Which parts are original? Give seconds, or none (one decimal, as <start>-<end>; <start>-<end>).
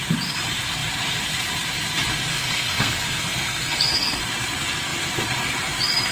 0.0-2.3; 4.2-6.1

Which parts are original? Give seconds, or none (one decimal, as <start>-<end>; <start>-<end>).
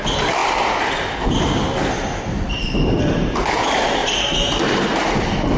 0.0-5.6